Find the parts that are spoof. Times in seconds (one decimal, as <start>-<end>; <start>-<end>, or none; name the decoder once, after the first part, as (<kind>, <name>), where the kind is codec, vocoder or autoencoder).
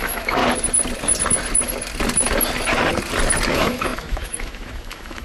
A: 0.0-0.4 (autoencoder, DAC-VAE); 3.5-5.2